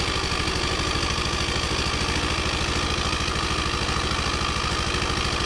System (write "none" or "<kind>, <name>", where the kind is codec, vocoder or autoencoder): none